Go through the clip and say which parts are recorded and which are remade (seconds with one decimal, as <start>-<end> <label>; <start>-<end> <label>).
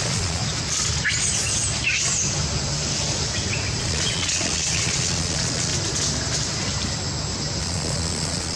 0.0-0.4 remade; 0.4-3.8 recorded; 3.8-5.7 remade; 5.7-7.6 recorded; 7.6-8.6 remade